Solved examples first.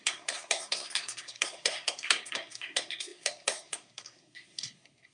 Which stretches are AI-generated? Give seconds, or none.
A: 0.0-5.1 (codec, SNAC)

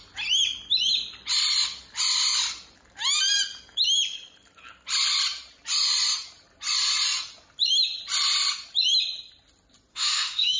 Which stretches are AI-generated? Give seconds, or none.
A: 9.9-10.6 (autoencoder, DAC-VAE)

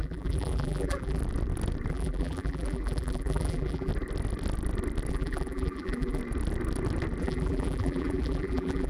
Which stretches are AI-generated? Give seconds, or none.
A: 0.0-1.2 (vocoder, BigVGAN v2); 1.9-3.9; 5.1-6.2; 7.2-8.9

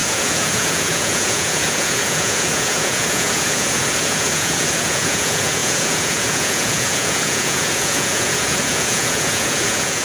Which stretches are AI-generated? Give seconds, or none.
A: 0.0-10.0 (vocoder, Vocos)

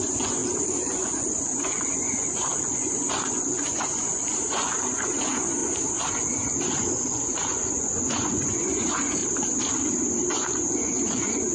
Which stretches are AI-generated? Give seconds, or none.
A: 0.0-5.6 (vocoder, Vocos); 6.1-9.2; 10.3-11.5

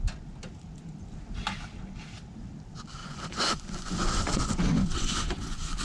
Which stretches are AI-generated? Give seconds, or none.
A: 3.0-5.8 (vocoder, Vocos)

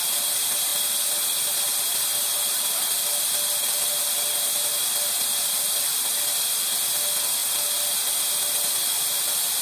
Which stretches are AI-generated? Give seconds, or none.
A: none